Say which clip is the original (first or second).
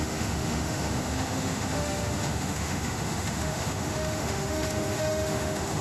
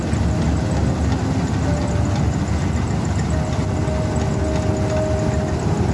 second